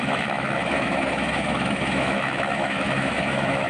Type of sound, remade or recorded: remade